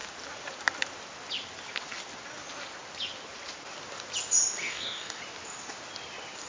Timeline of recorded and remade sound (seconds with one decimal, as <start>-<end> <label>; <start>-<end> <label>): 0.0-4.6 recorded; 4.6-5.2 remade; 5.2-6.5 recorded